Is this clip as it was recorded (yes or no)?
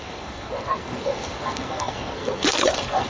no